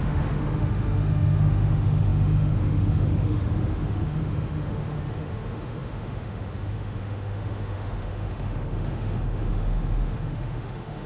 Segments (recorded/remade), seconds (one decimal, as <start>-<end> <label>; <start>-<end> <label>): 0.0-11.1 remade